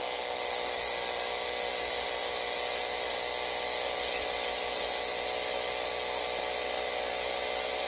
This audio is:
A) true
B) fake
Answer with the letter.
A